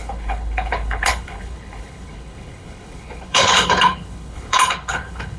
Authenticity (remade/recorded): remade